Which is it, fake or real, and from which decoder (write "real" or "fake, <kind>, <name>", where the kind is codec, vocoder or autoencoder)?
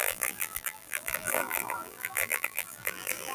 fake, vocoder, BigVGAN v2